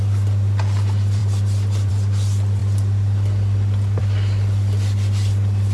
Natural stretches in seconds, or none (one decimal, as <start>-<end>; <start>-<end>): 0.0-5.7